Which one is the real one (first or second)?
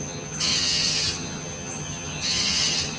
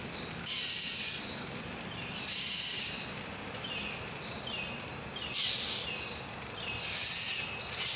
second